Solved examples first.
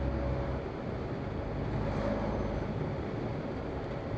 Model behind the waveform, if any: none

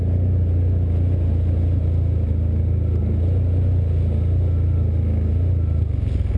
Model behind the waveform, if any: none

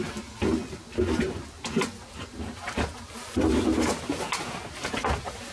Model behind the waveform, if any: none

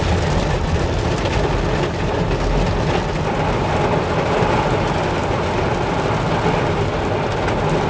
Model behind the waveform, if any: none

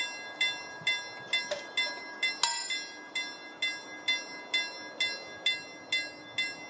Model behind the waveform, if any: none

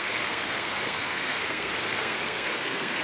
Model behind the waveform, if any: codec, SNAC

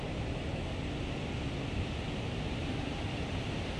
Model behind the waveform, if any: none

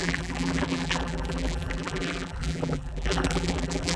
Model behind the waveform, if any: vocoder, BigVGAN v2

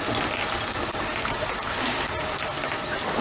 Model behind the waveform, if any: none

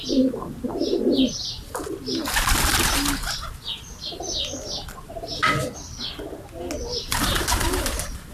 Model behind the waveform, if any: none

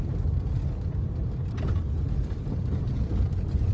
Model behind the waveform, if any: none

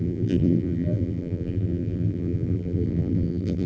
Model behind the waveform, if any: vocoder, BigVGAN v2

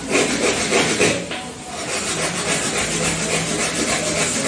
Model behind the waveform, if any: none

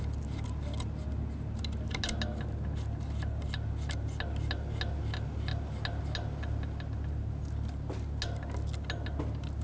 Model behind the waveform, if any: none